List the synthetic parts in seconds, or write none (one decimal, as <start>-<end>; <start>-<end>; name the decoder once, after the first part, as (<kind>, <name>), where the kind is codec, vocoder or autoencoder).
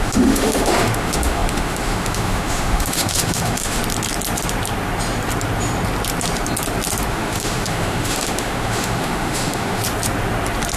0.0-3.8 (autoencoder, DAC-VAE); 7.1-9.8